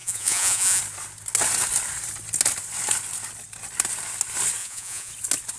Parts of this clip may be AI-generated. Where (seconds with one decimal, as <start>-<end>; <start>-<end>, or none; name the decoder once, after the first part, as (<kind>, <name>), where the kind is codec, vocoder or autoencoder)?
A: 0.0-0.8 (vocoder, Vocos); 4.6-5.1